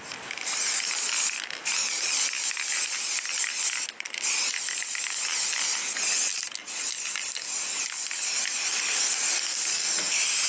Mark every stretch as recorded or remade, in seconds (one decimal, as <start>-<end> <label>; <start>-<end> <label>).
0.0-10.5 recorded